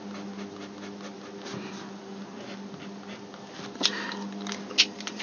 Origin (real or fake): real